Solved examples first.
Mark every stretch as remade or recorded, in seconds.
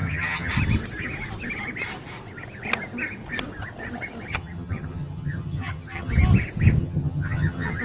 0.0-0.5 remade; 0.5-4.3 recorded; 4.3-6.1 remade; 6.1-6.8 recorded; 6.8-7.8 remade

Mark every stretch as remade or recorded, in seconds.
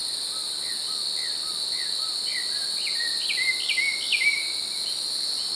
0.0-0.7 remade; 0.7-1.5 recorded; 1.5-2.6 remade; 2.6-4.1 recorded; 4.1-5.0 remade; 5.0-5.6 recorded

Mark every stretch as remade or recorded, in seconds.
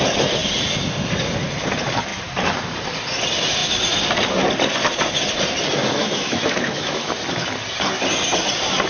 0.0-6.0 recorded; 6.0-7.1 remade; 7.1-8.9 recorded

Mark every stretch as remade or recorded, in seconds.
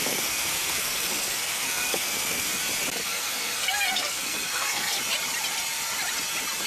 0.0-2.6 remade; 2.6-3.0 recorded; 3.0-5.0 remade; 5.0-6.7 recorded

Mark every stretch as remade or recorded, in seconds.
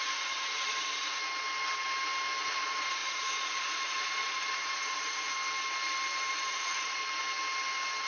0.0-1.2 remade; 1.2-2.4 recorded; 2.4-5.3 remade; 5.3-6.3 recorded; 6.3-7.0 remade; 7.0-8.1 recorded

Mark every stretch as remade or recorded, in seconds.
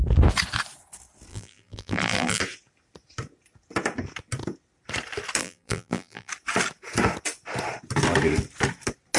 0.0-1.3 recorded; 1.3-2.4 remade; 2.4-5.4 recorded; 5.4-6.3 remade; 6.3-9.2 recorded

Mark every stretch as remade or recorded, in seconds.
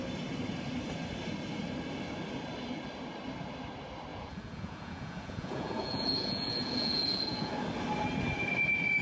0.0-4.1 recorded; 4.1-7.5 remade; 7.5-9.0 recorded